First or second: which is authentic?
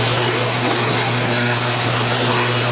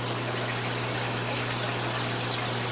second